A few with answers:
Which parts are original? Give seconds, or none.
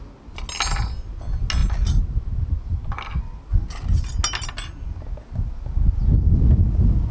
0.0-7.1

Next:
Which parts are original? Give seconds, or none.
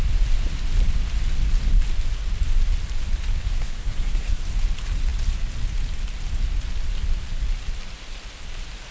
0.0-3.4; 4.4-8.9